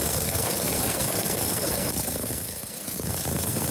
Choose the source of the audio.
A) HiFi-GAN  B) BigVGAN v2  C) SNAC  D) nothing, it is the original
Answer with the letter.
C